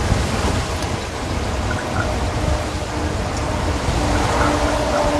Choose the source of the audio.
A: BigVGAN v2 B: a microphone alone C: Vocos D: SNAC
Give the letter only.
B